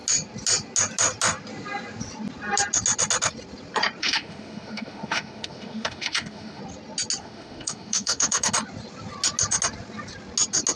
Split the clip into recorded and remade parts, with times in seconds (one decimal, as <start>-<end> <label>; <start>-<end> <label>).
0.0-4.0 recorded; 4.0-6.6 remade; 6.6-7.2 recorded; 7.2-8.5 remade; 8.5-10.8 recorded